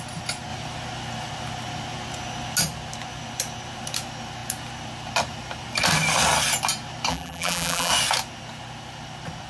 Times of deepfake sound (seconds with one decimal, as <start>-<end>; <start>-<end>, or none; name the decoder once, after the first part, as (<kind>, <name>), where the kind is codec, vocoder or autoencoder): 7.1-7.9 (vocoder, BigVGAN v2)